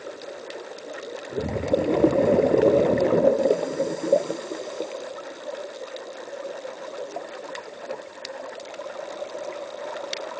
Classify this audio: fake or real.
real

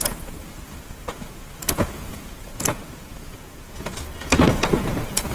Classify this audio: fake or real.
fake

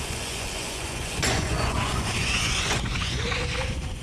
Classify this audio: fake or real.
fake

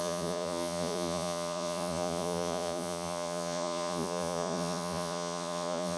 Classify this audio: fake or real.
fake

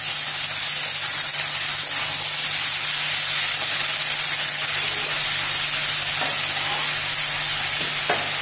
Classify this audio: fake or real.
real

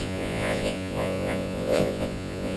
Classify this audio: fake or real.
fake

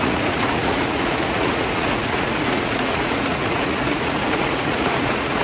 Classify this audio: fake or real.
fake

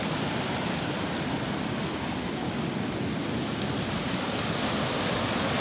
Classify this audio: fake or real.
real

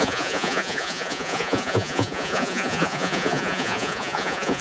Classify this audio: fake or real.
fake